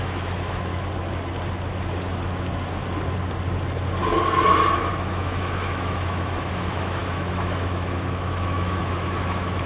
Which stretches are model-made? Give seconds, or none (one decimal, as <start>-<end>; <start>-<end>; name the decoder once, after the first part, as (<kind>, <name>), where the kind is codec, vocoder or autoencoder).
0.0-0.7 (autoencoder, DAC-VAE); 4.9-9.7